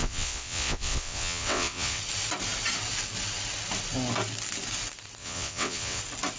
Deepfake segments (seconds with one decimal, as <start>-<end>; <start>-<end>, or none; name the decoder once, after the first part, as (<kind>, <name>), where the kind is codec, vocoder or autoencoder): 0.0-2.0 (vocoder, WaveNeXt); 5.2-6.0